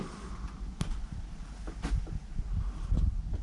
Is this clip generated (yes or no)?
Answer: no